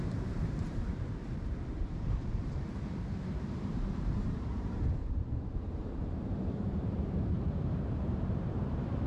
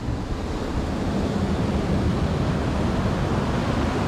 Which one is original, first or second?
second